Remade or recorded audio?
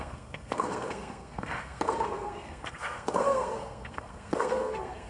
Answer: remade